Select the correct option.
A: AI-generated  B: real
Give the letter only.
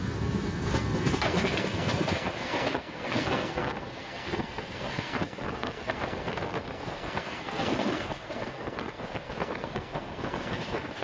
A